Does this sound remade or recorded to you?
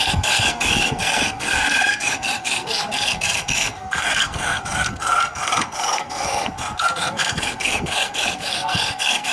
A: remade